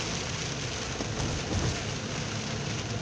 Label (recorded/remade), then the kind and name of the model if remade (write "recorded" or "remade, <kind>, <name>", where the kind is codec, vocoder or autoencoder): recorded